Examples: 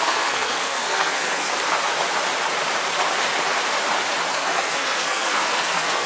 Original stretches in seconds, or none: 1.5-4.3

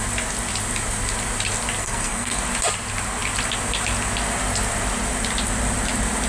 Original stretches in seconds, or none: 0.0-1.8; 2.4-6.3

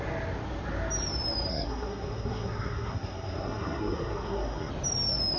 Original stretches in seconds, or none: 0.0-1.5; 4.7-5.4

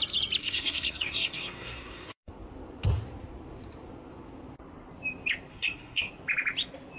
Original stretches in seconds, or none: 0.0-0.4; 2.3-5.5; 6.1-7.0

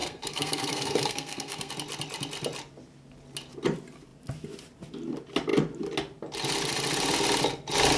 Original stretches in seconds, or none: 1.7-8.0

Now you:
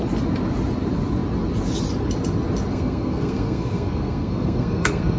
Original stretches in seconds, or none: 0.0-2.7